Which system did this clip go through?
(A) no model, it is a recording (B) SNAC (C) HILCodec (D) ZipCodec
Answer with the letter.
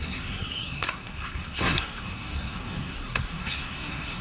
B